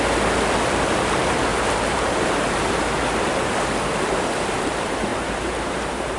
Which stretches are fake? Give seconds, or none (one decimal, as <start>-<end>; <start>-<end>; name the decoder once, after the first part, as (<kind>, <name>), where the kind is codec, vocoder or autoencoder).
1.5-2.8 (vocoder, BigVGAN v2); 5.1-6.2